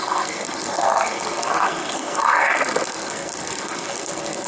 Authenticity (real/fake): fake